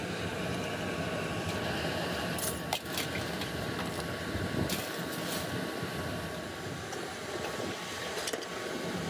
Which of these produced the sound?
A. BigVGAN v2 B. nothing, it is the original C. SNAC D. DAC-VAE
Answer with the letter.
A